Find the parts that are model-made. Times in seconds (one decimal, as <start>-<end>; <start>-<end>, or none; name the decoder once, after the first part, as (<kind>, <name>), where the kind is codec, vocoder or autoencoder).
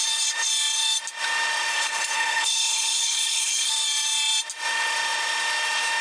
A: 1.7-3.7 (codec, HILCodec)